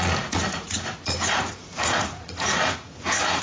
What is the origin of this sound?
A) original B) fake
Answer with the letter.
B